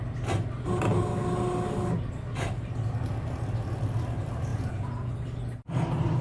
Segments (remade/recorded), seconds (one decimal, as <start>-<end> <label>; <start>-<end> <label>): 0.0-4.5 recorded; 4.5-5.1 remade; 5.1-6.2 recorded